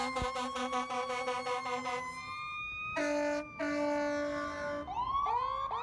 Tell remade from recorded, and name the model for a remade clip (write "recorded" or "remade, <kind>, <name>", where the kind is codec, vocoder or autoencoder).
recorded